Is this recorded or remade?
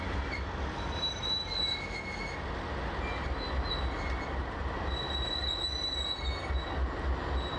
recorded